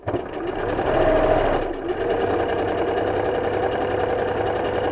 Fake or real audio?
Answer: real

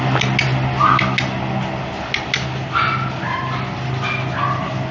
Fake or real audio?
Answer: real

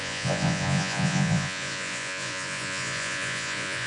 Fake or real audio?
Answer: fake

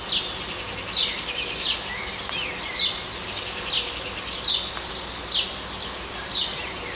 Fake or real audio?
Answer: real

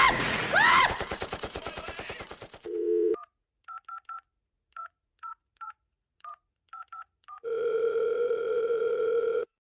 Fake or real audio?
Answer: fake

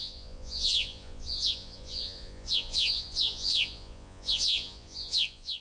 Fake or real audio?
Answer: fake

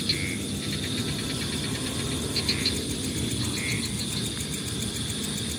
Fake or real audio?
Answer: real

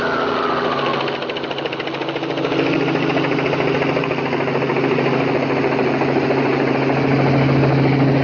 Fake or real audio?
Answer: real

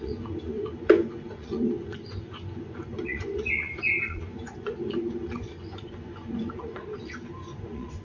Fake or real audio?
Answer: fake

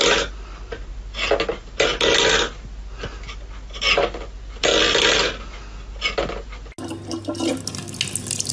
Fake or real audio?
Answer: real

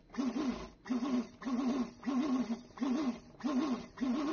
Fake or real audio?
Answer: real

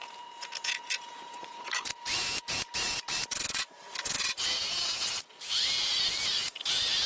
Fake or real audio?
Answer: fake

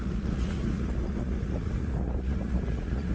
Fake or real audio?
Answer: fake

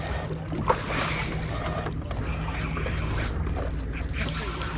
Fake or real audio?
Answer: real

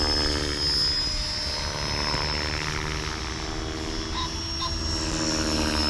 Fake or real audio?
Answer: real